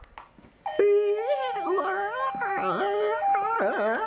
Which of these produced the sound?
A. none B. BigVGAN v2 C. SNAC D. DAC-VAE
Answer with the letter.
A